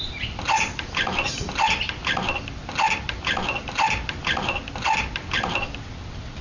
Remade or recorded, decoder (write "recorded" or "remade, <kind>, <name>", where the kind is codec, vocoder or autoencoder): remade, vocoder, BigVGAN v2